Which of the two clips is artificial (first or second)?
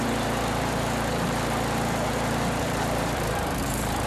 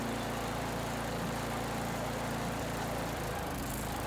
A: first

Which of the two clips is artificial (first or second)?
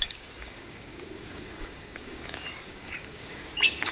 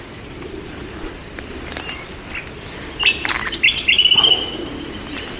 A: first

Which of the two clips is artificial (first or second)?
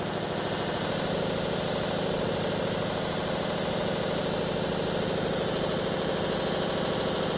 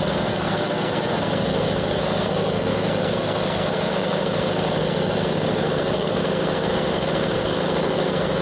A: second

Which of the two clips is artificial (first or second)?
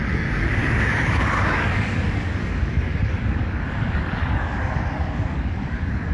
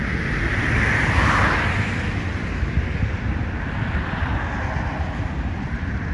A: first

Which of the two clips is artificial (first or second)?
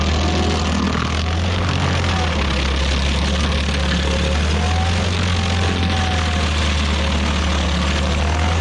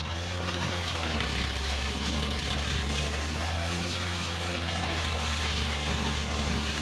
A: second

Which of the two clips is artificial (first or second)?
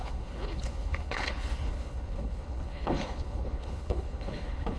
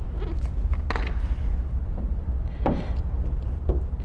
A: first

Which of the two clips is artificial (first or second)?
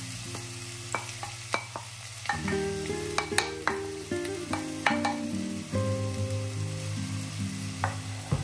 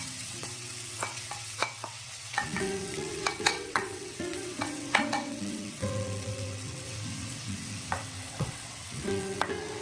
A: second